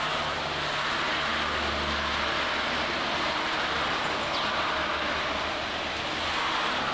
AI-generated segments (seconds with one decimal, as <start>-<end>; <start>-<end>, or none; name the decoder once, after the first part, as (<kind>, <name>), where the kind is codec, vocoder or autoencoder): none